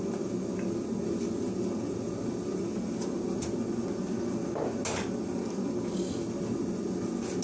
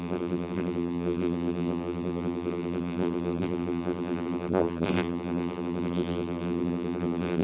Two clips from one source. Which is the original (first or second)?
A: first